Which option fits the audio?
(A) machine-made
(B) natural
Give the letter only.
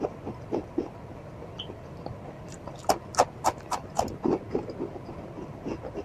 B